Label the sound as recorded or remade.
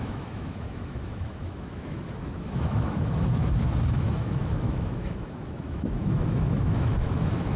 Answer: remade